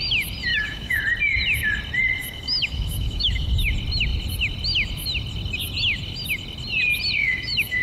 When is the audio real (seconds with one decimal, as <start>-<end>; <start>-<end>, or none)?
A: 0.0-0.5; 1.0-2.2; 3.5-7.2